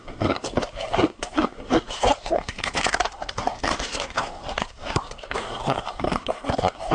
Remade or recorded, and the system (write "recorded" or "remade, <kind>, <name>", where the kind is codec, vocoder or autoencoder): remade, codec, SNAC